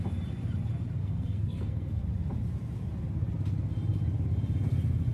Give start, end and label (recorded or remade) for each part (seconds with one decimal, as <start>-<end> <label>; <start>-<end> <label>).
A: 0.0-1.0 recorded; 1.0-2.0 remade; 2.0-5.1 recorded

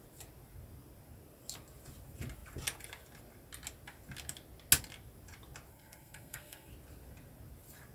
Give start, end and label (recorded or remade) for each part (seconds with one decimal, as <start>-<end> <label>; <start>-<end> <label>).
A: 0.0-5.7 recorded; 5.7-6.7 remade; 6.7-7.9 recorded

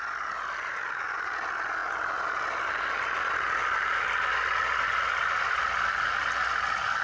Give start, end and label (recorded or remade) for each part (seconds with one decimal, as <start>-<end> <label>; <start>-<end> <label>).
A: 0.0-7.0 recorded

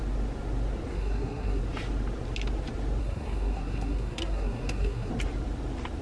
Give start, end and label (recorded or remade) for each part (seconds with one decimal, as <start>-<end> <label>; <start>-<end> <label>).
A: 0.0-0.9 recorded; 0.9-1.6 remade; 1.6-3.0 recorded; 3.0-5.1 remade; 5.1-6.0 recorded

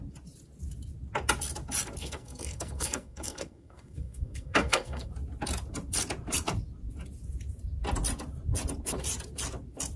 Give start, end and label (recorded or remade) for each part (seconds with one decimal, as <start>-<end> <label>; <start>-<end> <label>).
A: 0.0-2.0 recorded; 2.0-5.1 remade; 5.1-10.0 recorded

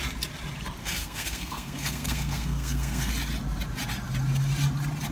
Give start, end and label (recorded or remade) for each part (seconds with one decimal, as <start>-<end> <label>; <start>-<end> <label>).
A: 0.0-0.8 recorded; 0.8-3.1 remade; 3.1-5.1 recorded